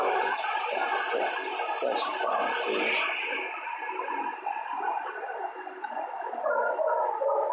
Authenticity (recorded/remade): recorded